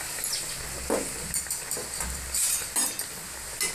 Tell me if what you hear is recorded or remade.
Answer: recorded